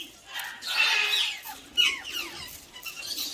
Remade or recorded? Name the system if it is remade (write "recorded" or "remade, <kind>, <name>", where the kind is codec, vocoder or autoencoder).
recorded